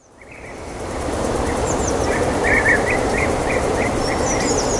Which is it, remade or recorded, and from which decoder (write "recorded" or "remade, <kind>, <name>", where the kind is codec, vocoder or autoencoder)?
remade, vocoder, BigVGAN v2